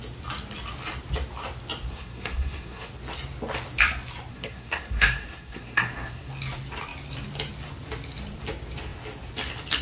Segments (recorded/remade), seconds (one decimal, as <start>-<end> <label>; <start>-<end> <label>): 0.0-1.9 recorded; 1.9-2.9 remade; 2.9-4.3 recorded; 4.3-6.3 remade; 6.3-9.8 recorded